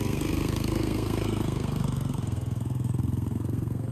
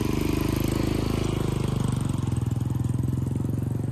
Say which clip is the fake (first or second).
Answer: first